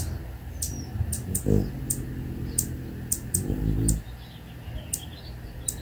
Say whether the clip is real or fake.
real